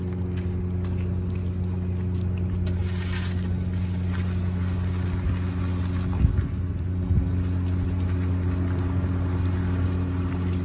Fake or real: real